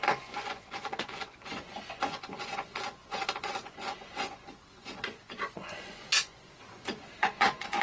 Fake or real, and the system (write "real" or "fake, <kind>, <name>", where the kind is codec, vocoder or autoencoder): fake, vocoder, Vocos